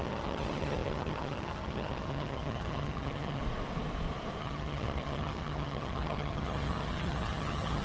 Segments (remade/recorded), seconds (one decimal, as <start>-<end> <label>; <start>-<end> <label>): 0.0-3.4 remade; 3.4-4.4 recorded; 4.4-7.8 remade